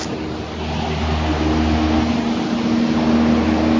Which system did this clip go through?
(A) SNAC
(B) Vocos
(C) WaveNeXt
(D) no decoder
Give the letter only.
D